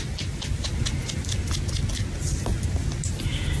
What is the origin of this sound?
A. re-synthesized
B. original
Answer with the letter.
B